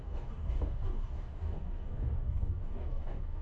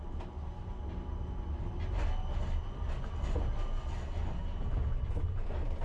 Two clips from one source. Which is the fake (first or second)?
first